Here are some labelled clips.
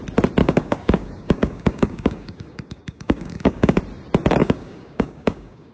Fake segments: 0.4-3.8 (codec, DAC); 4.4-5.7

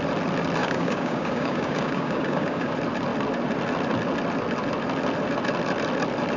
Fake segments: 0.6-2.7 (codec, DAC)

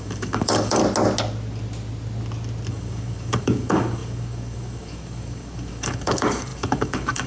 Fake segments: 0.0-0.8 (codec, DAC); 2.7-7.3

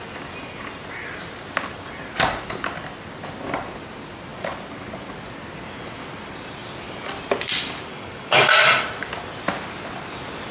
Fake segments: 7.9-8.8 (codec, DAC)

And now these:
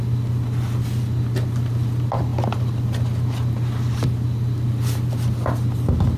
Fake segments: none

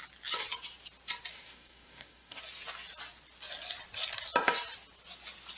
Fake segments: 1.3-2.4 (codec, DAC)

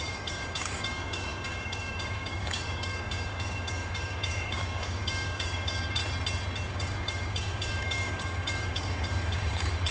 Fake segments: 0.0-6.0 (codec, DAC); 6.7-9.9